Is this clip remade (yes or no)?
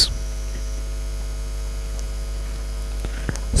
no